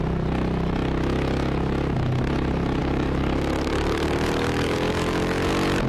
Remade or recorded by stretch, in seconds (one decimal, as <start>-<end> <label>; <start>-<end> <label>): 0.0-2.8 recorded; 2.8-5.5 remade; 5.5-5.9 recorded